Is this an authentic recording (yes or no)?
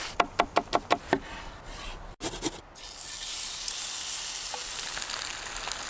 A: yes